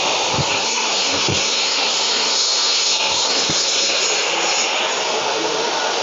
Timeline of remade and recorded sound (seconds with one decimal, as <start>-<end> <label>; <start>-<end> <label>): 0.0-0.4 recorded; 0.4-4.0 remade; 4.0-6.0 recorded